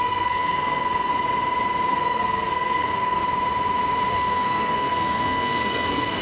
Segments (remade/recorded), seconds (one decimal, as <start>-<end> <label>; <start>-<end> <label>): 0.0-1.1 remade; 1.1-1.9 recorded; 1.9-3.2 remade; 3.2-4.1 recorded; 4.1-6.2 remade